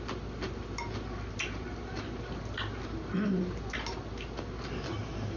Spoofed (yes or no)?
no